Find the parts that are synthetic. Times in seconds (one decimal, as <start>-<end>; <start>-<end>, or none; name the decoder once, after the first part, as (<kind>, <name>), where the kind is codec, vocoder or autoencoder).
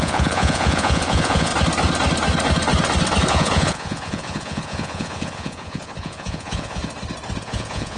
0.0-1.5 (vocoder, Vocos); 3.3-6.8; 7.4-8.0